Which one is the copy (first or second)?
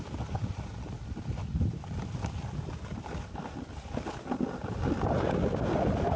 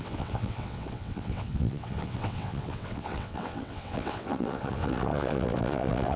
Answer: second